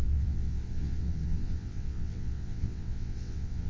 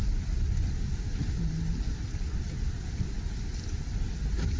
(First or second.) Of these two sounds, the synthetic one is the first